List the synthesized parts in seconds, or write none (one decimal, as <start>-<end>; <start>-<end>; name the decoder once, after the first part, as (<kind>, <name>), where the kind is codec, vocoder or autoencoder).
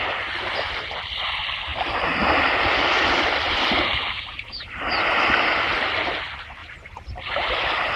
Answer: 1.7-4.7 (vocoder, BigVGAN v2); 6.6-7.6